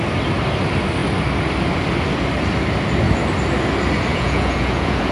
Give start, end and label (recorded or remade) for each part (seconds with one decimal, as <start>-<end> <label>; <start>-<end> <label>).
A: 0.0-4.1 recorded; 4.1-5.1 remade